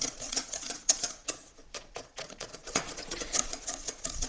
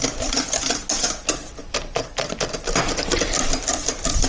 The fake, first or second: first